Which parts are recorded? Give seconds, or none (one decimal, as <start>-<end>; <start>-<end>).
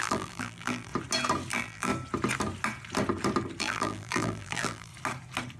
0.9-1.5; 1.9-3.6; 4.9-5.6